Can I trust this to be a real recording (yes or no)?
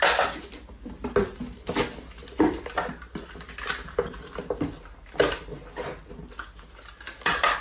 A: yes